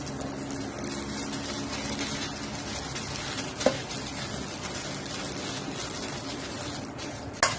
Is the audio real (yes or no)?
yes